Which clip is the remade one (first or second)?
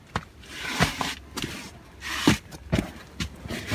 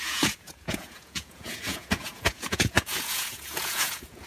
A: second